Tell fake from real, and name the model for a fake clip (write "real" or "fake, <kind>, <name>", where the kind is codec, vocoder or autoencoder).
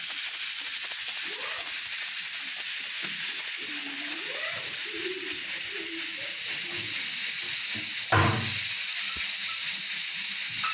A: real